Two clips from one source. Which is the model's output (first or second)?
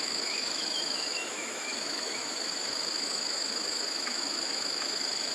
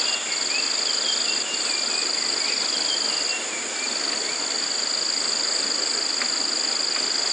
first